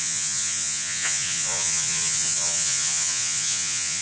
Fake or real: fake